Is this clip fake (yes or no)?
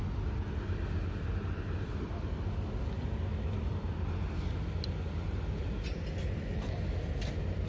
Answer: no